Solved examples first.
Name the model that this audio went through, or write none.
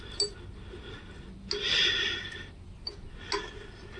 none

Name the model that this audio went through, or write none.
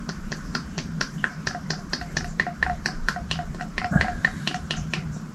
vocoder, BigVGAN v2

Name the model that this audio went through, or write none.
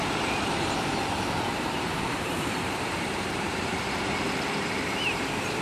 vocoder, BigVGAN v2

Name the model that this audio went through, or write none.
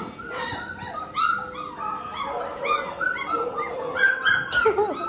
none